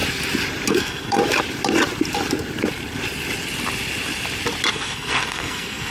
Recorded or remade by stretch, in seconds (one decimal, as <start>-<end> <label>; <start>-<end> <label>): 0.0-0.7 recorded; 0.7-1.2 remade; 1.2-4.7 recorded; 4.7-5.9 remade